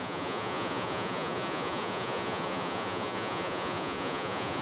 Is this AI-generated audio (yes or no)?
yes